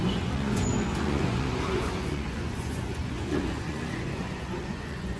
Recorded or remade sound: remade